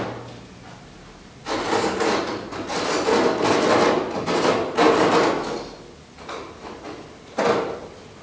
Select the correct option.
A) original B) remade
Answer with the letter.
A